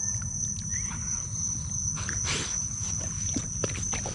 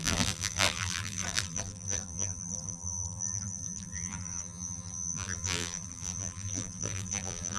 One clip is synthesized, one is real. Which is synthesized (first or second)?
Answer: second